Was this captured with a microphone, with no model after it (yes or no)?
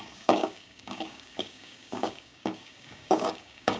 no